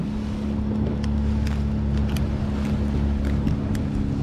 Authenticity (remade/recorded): recorded